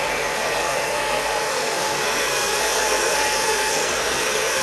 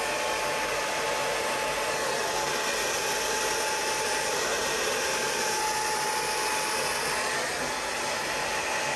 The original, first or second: second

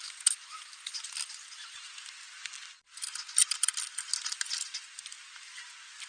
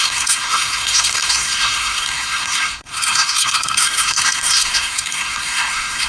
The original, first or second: first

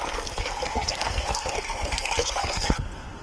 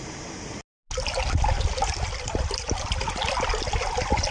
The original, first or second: second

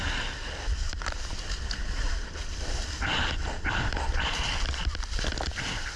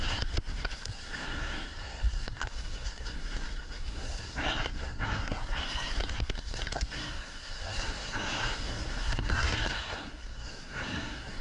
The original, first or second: first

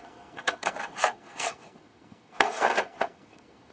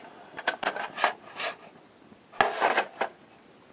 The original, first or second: second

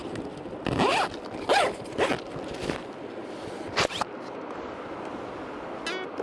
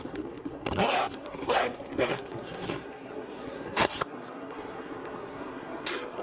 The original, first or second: first